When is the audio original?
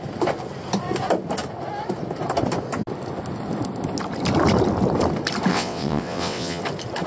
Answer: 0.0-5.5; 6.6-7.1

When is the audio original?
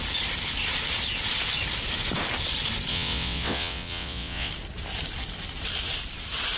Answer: 0.0-2.9; 4.5-6.6